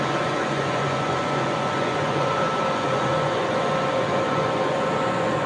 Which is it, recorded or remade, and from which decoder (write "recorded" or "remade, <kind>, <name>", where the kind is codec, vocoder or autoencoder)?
remade, vocoder, Vocos